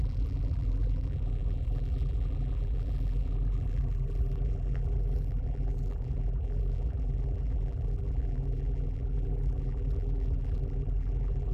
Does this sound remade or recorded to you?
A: remade